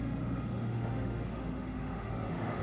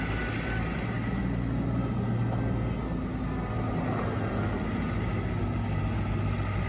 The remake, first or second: first